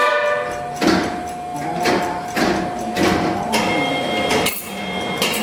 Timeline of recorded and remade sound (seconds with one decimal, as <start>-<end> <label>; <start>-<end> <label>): 0.0-5.4 recorded